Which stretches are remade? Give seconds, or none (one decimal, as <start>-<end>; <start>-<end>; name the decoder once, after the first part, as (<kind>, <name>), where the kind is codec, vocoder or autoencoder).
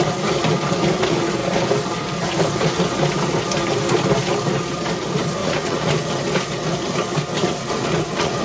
5.4-6.1 (vocoder, Vocos); 7.4-8.4